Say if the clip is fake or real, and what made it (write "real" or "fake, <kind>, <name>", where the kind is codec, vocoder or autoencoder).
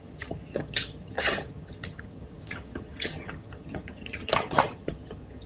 fake, vocoder, HiFi-GAN